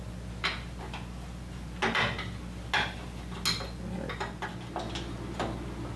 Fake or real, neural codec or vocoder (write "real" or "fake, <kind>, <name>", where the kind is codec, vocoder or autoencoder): real